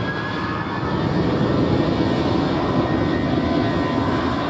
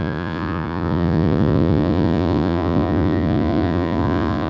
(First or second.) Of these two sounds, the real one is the first